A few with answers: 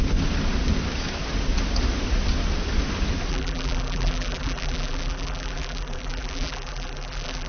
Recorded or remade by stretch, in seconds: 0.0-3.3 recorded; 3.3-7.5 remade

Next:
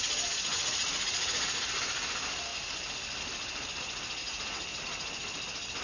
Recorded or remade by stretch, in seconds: 0.0-0.5 recorded; 0.5-1.8 remade; 1.8-4.2 recorded; 4.2-4.8 remade; 4.8-5.8 recorded

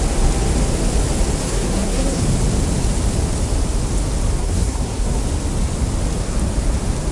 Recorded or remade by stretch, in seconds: 0.0-1.4 recorded; 1.4-2.2 remade; 2.2-4.4 recorded; 4.4-5.2 remade; 5.2-7.1 recorded

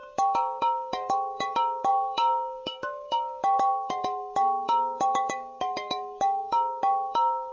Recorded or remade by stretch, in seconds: 0.0-7.5 remade

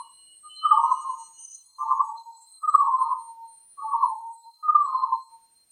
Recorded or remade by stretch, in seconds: 0.0-1.4 recorded; 1.4-3.0 remade; 3.0-4.1 recorded; 4.1-5.3 remade; 5.3-5.7 recorded

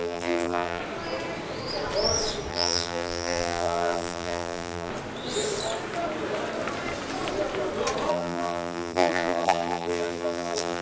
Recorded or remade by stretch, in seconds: 0.0-0.8 remade; 0.8-2.5 recorded; 2.5-4.9 remade; 4.9-8.1 recorded; 8.1-10.8 remade

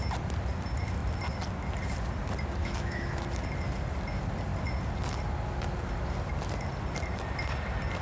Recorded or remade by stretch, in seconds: 0.0-2.6 recorded; 2.6-3.2 remade; 3.2-8.0 recorded

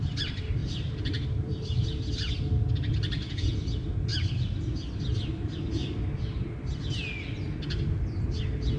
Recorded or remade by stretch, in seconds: 0.0-0.6 recorded; 0.6-2.3 remade; 2.3-4.1 recorded; 4.1-4.6 remade; 4.6-8.8 recorded